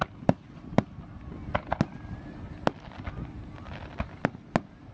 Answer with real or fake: real